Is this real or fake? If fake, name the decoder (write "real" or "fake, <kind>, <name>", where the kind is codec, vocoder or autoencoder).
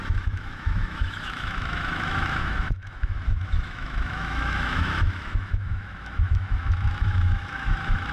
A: fake, autoencoder, DAC-VAE